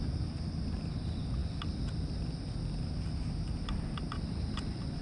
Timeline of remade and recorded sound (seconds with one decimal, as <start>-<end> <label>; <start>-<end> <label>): 0.0-5.0 recorded